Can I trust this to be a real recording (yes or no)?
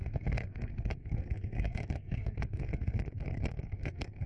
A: no